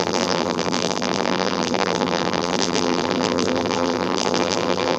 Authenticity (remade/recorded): remade